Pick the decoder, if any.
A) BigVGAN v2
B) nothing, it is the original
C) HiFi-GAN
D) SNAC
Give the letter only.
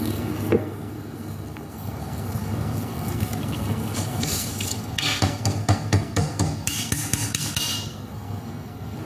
D